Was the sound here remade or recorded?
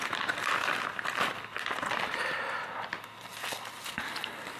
recorded